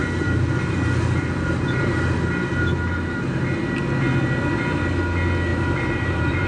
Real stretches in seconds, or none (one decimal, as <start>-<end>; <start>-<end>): 3.6-5.5